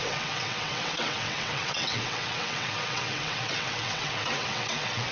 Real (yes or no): no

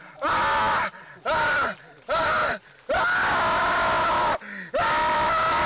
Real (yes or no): yes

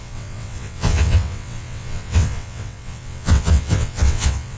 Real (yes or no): no